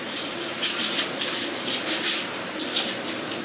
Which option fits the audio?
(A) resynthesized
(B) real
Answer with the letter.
B